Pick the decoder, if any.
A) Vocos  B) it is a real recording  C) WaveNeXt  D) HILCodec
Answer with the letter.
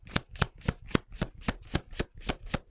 B